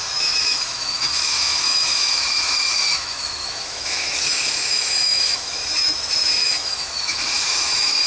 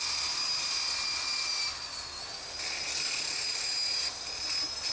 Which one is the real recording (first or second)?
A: second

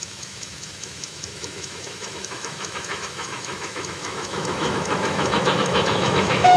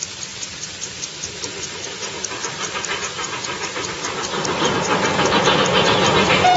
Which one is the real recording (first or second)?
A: second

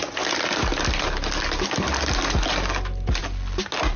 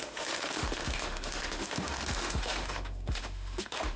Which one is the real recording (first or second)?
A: first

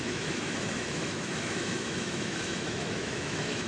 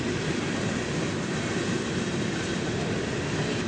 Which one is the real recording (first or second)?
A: second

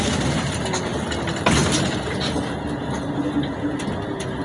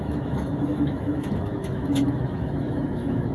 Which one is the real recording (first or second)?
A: first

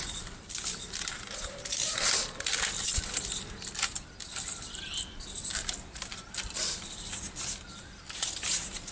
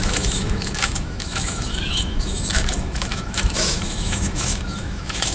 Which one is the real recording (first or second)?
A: first